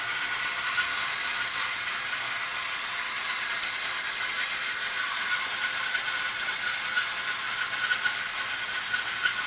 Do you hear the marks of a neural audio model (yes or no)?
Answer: no